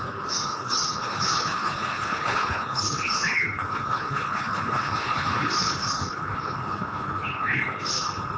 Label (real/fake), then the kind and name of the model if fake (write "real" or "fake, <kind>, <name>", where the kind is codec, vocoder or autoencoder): fake, codec, HILCodec